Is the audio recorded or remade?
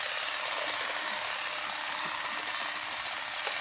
recorded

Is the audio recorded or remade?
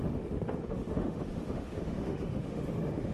remade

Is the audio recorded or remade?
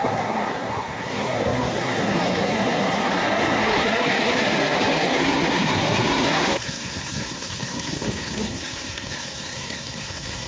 remade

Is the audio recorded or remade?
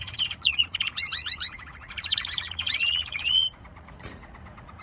remade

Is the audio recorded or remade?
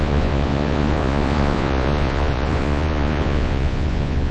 remade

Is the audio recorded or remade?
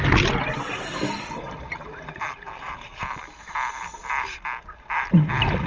recorded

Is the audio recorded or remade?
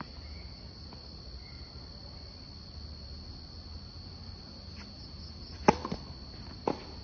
recorded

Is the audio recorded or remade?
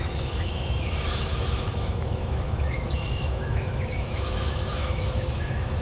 remade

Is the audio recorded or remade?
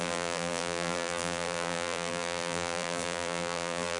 remade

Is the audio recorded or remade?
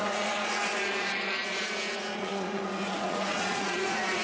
remade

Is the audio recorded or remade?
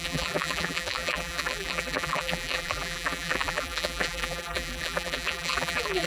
remade